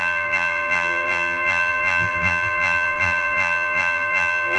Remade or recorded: remade